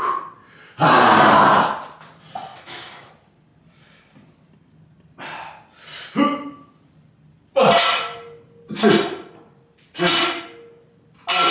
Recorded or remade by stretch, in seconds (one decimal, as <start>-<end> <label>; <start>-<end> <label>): 0.0-2.5 recorded; 2.5-3.1 remade; 3.1-11.5 recorded